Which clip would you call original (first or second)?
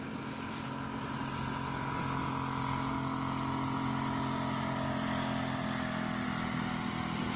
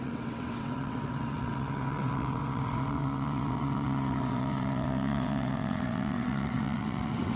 first